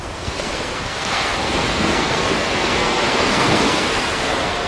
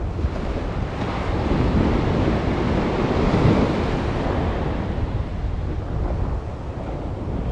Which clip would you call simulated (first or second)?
first